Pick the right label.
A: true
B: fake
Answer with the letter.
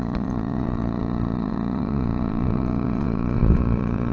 B